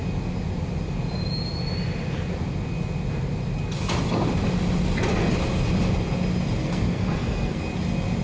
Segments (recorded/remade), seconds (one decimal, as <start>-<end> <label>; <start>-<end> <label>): 0.0-6.6 recorded; 6.6-7.6 remade; 7.6-8.2 recorded